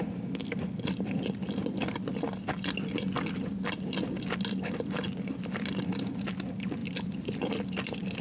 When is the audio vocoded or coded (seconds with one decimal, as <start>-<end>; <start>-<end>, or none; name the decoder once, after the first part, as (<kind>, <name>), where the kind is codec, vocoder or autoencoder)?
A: 6.8-8.2 (vocoder, BigVGAN v2)

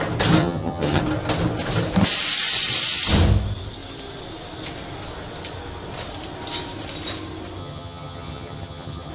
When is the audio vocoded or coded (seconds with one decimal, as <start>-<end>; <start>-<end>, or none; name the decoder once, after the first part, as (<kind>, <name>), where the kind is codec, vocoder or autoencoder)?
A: 0.4-1.0 (vocoder, HiFi-GAN); 7.6-9.1